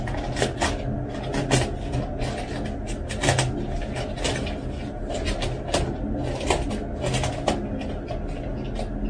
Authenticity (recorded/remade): recorded